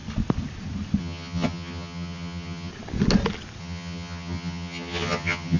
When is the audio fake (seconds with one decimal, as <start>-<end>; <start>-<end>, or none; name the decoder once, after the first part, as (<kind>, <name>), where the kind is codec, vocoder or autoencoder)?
1.0-2.7 (vocoder, HiFi-GAN); 3.6-5.6